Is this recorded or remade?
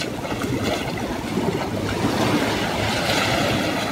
recorded